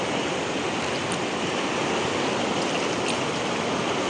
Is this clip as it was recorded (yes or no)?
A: yes